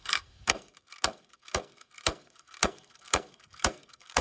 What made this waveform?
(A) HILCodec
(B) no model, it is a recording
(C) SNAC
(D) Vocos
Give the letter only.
C